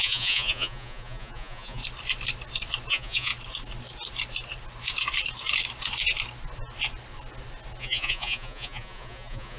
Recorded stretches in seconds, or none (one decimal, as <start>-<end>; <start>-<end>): 1.8-2.9; 3.3-7.8